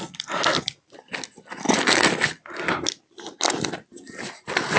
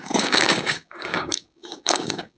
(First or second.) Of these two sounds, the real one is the first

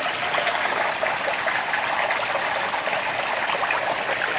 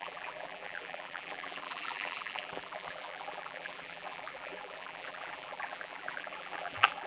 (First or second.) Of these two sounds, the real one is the first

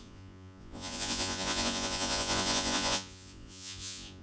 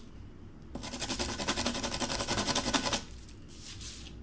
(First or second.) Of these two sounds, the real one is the second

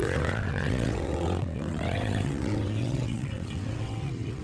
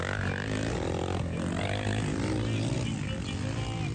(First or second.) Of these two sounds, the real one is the second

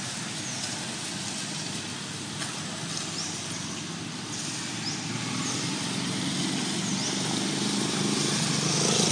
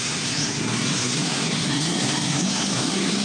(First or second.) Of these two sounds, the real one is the first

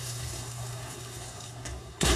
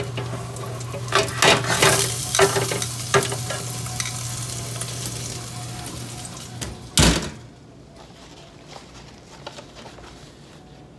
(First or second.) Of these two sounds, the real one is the second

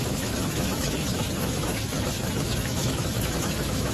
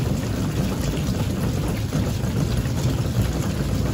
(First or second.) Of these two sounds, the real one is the second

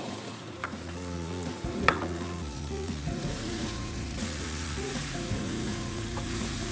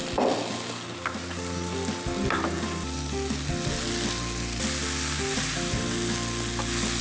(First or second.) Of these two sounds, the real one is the second